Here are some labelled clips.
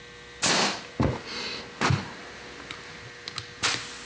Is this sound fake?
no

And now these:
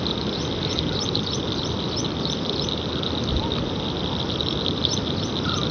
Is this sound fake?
no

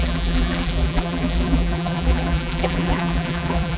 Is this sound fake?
yes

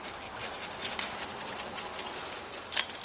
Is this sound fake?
no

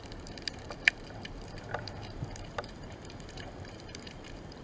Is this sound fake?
yes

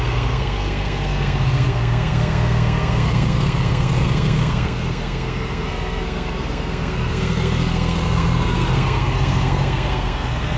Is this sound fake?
yes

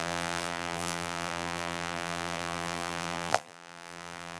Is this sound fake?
yes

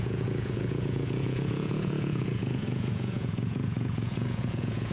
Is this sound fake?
yes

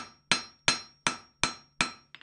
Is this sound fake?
no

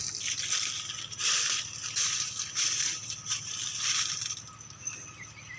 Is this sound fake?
yes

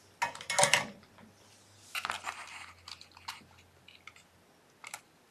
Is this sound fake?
no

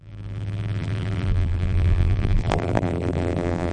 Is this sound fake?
yes